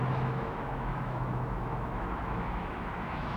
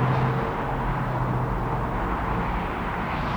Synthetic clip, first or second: first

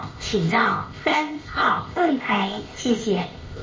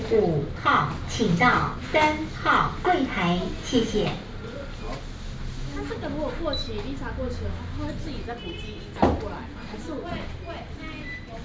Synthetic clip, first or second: first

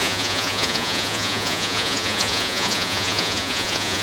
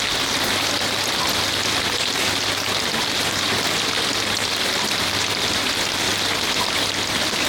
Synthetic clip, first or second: first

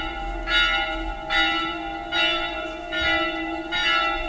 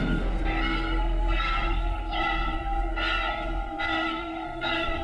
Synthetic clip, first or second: second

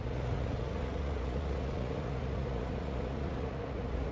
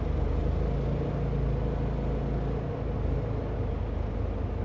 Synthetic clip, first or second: first